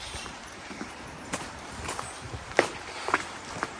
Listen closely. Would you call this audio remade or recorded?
remade